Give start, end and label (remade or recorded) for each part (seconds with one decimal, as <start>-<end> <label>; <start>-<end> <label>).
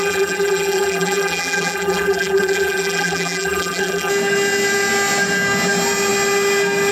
0.0-4.1 remade; 4.1-6.9 recorded